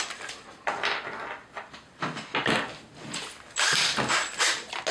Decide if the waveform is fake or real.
real